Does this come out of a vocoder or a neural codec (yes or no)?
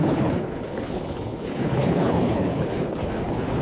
yes